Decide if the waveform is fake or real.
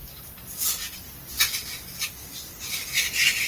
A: real